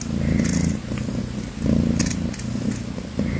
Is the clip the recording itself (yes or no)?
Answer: yes